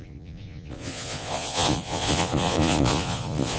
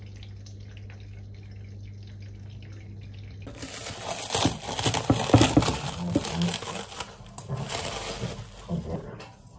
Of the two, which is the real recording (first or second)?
second